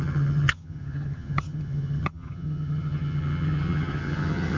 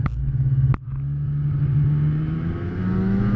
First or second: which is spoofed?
first